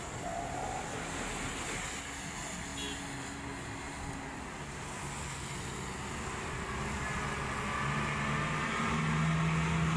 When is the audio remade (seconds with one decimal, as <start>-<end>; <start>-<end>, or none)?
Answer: none